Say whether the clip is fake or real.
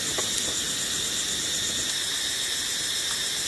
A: real